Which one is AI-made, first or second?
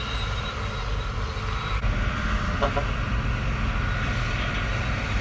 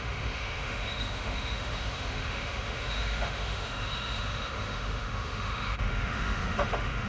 second